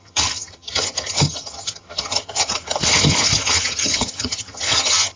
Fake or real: fake